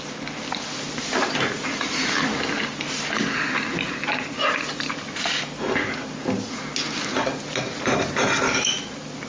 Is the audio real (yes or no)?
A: yes